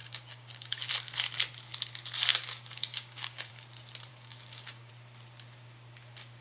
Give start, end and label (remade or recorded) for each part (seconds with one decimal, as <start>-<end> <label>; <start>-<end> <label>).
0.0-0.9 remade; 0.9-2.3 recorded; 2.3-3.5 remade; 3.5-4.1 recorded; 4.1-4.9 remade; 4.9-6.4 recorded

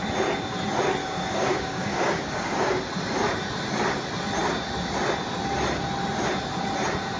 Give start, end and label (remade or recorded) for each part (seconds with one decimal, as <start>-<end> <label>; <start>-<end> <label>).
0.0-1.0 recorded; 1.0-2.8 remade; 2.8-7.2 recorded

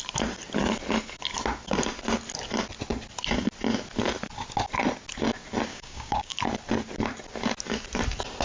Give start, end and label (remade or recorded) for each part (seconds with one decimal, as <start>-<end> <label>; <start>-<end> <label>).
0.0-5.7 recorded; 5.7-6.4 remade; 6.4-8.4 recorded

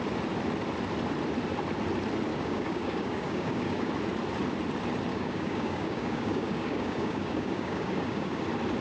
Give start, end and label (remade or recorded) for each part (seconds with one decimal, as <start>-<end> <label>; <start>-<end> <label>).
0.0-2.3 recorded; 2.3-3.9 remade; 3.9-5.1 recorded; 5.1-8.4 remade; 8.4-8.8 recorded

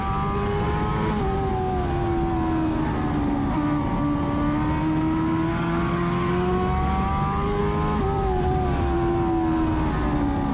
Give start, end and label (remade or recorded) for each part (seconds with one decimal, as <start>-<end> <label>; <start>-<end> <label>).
0.0-5.5 recorded; 5.5-7.6 remade; 7.6-10.5 recorded